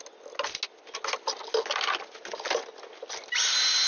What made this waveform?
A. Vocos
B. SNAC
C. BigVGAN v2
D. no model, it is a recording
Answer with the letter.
D